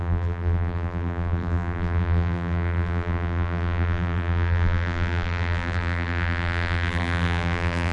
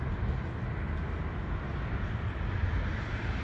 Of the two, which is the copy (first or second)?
first